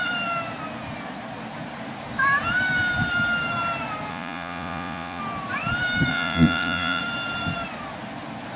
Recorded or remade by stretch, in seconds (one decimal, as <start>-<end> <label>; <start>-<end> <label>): 0.0-4.1 recorded; 4.1-5.2 remade; 5.2-6.1 recorded; 6.1-7.0 remade; 7.0-8.6 recorded